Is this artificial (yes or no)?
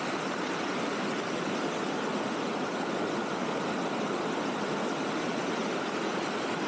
no